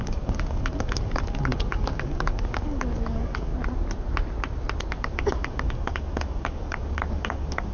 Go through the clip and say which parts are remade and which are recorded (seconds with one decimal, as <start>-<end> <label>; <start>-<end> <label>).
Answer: 0.0-3.5 remade; 3.5-4.9 recorded; 4.9-7.7 remade